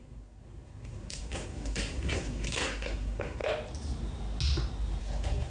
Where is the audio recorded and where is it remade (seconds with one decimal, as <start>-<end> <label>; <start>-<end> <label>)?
0.0-3.4 remade; 3.4-5.0 recorded; 5.0-5.5 remade